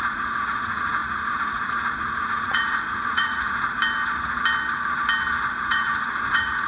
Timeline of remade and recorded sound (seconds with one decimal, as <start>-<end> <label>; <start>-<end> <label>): 0.0-3.8 remade; 3.8-5.6 recorded; 5.6-6.7 remade